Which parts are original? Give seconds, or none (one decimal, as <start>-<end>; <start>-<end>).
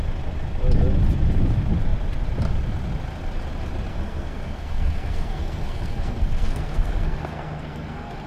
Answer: 0.0-3.9